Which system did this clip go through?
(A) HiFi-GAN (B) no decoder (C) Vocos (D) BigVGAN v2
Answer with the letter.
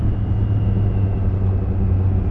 B